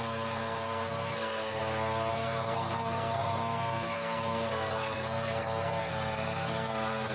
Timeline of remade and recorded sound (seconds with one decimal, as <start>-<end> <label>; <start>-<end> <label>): 0.0-1.6 remade; 1.6-2.1 recorded; 2.1-7.1 remade